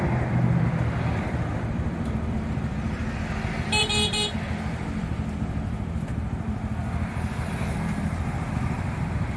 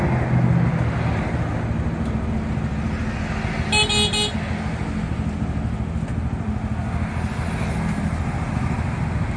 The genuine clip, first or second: second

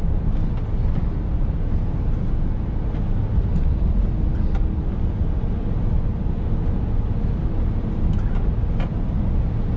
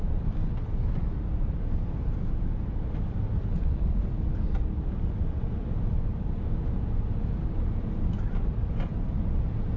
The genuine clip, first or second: first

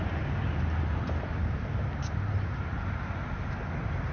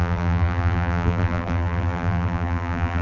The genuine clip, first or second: first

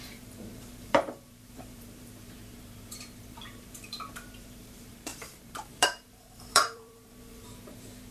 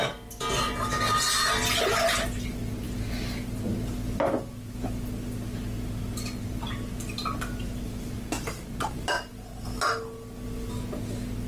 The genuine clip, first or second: second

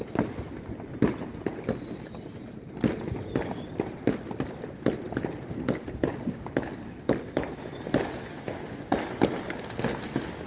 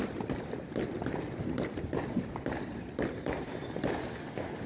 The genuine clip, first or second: first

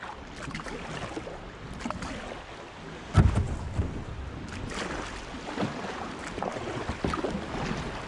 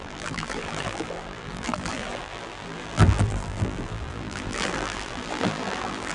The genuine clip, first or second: first